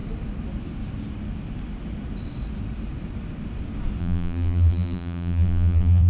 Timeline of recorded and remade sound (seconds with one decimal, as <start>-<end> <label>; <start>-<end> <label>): 0.0-4.0 recorded; 4.0-6.1 remade